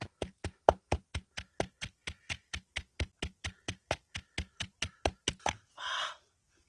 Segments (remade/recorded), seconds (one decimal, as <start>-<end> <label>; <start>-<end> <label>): 0.0-6.7 recorded